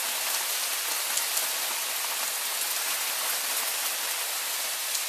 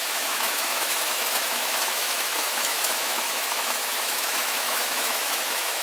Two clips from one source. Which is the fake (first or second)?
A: second